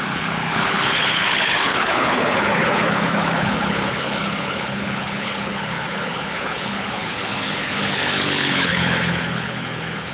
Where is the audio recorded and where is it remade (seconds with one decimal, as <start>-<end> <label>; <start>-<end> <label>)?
0.0-10.1 remade